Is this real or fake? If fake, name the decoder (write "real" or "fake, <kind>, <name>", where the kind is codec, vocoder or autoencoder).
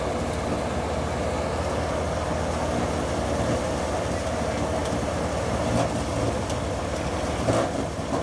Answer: real